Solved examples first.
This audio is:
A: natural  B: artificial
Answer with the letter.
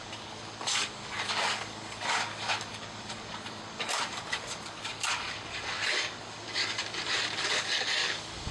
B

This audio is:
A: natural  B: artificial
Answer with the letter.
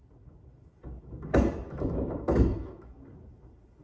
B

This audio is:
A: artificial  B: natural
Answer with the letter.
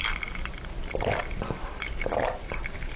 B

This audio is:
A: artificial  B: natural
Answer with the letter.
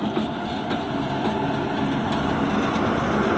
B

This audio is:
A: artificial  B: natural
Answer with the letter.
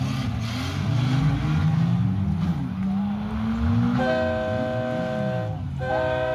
B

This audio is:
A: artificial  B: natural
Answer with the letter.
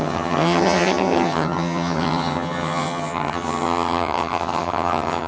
A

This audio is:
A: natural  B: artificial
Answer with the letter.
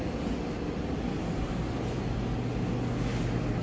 A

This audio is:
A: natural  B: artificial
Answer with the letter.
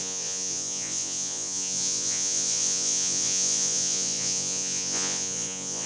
B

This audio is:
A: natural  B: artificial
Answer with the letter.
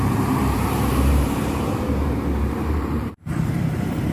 B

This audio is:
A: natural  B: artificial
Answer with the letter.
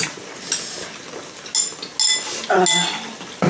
A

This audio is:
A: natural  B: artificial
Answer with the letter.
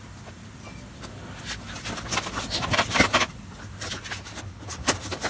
A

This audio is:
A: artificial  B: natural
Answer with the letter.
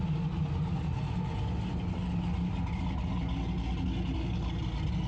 B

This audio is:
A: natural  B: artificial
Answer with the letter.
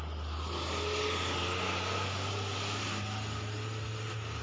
A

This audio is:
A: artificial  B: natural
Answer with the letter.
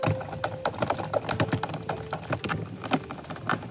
B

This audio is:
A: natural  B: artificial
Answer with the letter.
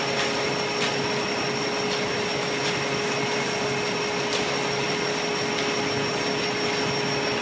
A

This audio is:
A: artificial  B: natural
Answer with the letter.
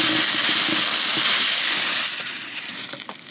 B